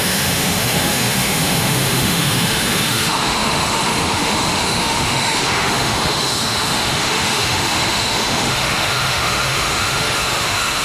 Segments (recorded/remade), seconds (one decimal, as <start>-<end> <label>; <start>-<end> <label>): 0.0-10.8 remade